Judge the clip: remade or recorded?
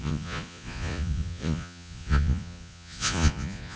remade